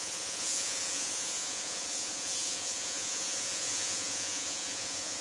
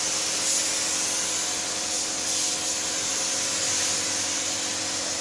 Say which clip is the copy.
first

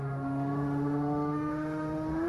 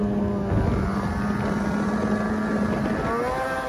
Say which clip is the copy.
first